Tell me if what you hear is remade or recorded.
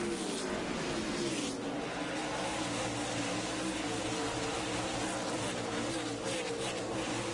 recorded